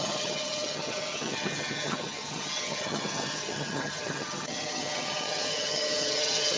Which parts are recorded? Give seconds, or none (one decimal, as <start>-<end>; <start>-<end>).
none